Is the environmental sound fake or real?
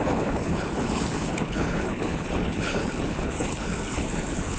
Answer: fake